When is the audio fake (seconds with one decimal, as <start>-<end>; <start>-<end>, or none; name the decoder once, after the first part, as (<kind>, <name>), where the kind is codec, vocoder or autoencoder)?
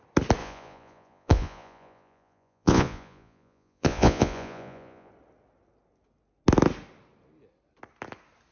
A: 0.4-5.1 (vocoder, Vocos)